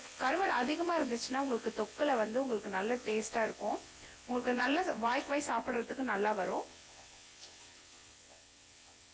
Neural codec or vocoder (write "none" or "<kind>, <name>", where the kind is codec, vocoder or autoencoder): vocoder, WaveNeXt